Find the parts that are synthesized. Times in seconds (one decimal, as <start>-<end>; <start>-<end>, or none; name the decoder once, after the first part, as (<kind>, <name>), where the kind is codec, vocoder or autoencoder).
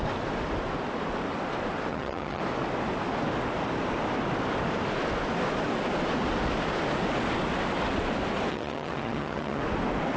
1.9-2.4 (vocoder, HiFi-GAN); 8.5-9.6